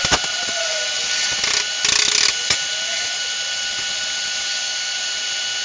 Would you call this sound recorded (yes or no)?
yes